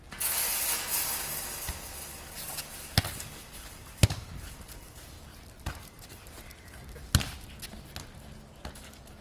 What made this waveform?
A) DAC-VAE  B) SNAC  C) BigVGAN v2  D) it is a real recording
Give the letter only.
D